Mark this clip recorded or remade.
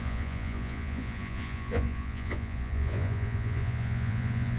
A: remade